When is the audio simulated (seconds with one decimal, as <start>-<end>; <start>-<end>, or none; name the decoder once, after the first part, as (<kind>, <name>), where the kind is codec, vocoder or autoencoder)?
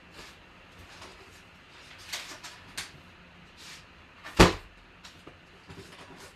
none